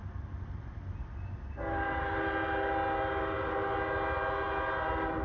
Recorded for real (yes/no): yes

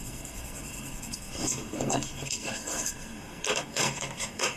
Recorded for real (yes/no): no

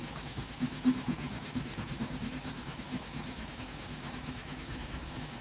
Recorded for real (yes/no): no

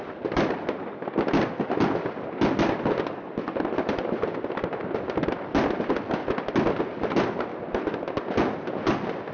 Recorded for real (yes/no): yes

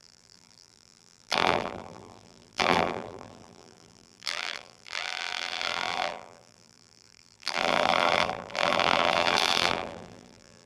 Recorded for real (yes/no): no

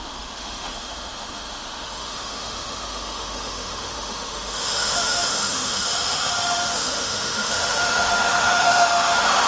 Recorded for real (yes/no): no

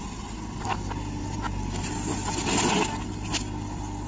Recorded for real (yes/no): yes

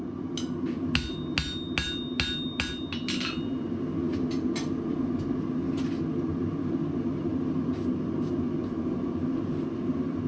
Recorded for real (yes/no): yes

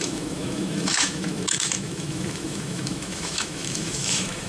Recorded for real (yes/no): no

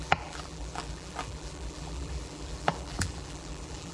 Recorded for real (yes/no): no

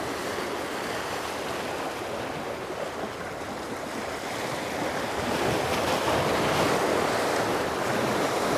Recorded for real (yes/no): yes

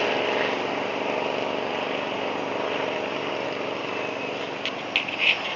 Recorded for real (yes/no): yes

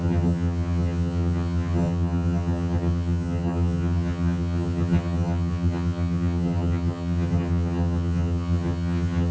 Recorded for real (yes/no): no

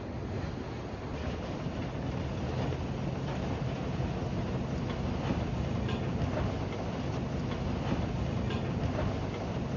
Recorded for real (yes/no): yes